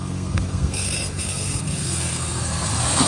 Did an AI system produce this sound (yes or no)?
yes